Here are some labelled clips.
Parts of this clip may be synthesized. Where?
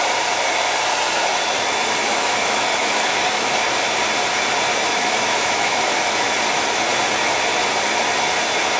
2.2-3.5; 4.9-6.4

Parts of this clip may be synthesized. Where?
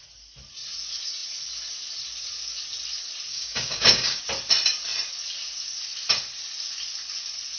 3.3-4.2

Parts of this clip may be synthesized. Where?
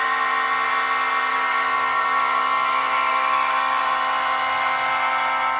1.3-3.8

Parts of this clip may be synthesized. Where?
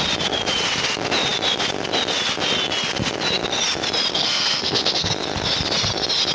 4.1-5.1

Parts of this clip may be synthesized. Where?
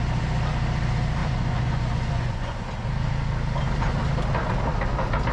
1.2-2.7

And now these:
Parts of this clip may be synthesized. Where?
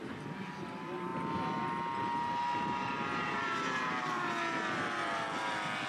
3.1-4.3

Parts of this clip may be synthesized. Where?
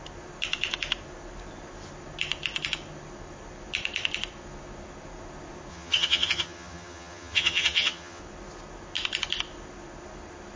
5.7-8.2